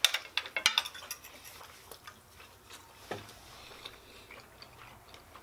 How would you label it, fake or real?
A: real